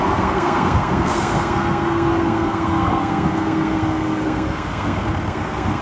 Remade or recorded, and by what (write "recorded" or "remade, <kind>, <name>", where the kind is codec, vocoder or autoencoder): remade, codec, SNAC